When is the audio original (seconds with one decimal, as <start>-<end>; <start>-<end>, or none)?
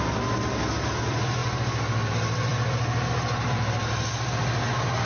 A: 0.0-5.1